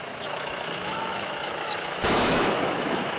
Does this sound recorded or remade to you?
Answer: remade